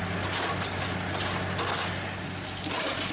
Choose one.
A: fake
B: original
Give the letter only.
B